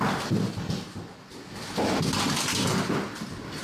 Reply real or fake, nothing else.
real